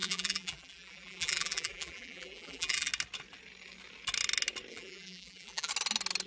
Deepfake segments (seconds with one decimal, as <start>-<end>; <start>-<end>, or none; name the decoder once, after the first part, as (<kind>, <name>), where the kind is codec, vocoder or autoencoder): 0.0-2.9 (vocoder, BigVGAN v2); 4.7-5.7

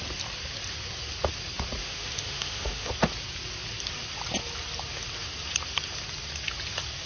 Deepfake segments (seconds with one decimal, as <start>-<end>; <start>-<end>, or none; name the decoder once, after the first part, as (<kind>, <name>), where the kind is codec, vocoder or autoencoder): 1.8-2.9 (autoencoder, DAC-VAE)